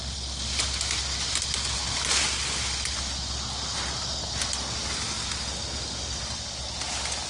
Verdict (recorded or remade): recorded